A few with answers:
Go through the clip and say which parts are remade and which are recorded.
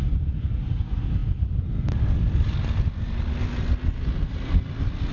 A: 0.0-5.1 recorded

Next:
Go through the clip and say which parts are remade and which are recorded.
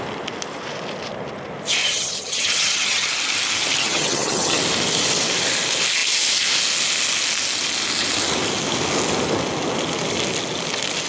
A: 0.0-1.8 recorded; 1.8-3.1 remade; 3.1-3.8 recorded; 3.8-4.6 remade; 4.6-11.1 recorded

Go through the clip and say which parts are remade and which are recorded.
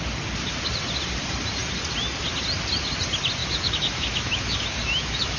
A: 0.0-3.4 recorded; 3.4-5.4 remade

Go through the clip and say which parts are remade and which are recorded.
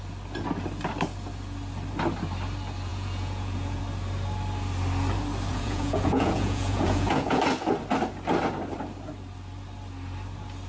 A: 0.0-2.9 recorded; 2.9-3.8 remade; 3.8-5.5 recorded; 5.5-7.4 remade; 7.4-10.7 recorded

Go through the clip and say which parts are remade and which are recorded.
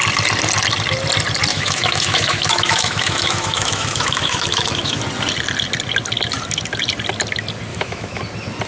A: 0.0-1.5 recorded; 1.5-5.0 remade; 5.0-7.7 recorded; 7.7-8.2 remade; 8.2-8.7 recorded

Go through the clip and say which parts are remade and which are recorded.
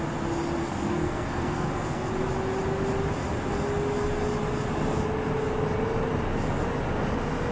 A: 0.0-0.6 recorded; 0.6-2.1 remade; 2.1-7.5 recorded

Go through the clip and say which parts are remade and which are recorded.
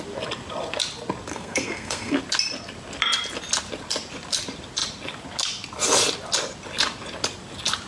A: 0.0-1.3 recorded; 1.3-2.2 remade; 2.2-7.9 recorded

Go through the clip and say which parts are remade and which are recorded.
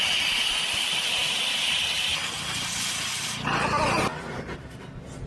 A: 0.0-5.3 recorded